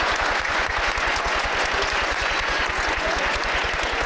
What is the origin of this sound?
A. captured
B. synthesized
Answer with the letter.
B